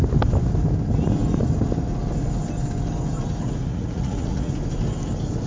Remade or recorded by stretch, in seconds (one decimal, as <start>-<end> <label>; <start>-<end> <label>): 0.0-3.7 recorded; 3.7-4.5 remade; 4.5-5.5 recorded